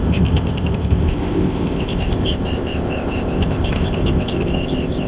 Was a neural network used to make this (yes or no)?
yes